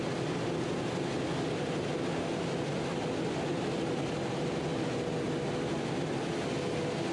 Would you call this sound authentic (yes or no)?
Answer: yes